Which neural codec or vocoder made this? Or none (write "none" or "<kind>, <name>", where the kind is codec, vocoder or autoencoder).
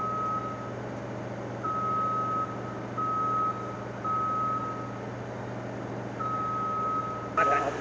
none